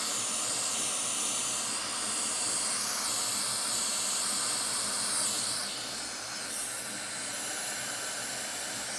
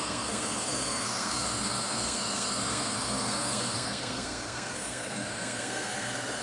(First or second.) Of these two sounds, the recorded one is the first